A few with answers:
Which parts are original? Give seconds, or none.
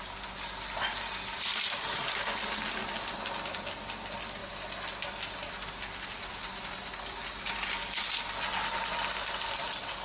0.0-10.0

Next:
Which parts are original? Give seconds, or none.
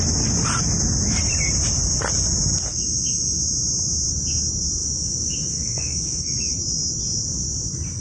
0.0-2.7; 3.4-4.8; 6.5-8.0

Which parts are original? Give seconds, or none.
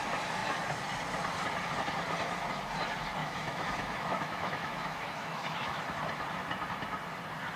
0.0-3.2; 5.8-7.6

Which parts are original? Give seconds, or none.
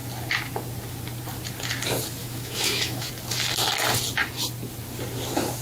0.0-2.2; 3.1-5.6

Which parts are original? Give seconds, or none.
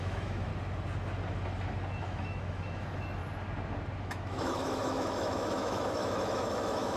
0.5-2.0; 3.2-4.0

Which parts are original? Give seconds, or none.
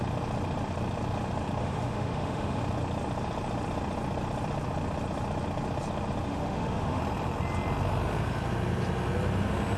0.0-1.6; 2.6-6.3; 7.0-9.8